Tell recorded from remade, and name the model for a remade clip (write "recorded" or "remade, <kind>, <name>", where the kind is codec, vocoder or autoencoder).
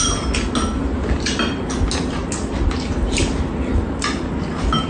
recorded